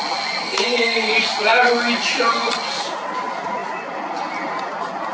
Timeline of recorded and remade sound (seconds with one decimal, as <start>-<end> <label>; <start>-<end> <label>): 0.0-0.4 recorded; 0.4-1.1 remade; 1.1-5.1 recorded